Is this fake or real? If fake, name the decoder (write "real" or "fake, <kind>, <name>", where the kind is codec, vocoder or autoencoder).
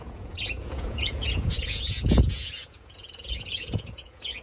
fake, vocoder, Vocos